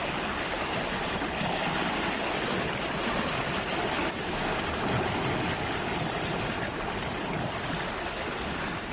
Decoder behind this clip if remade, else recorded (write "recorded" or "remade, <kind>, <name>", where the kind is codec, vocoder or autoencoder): recorded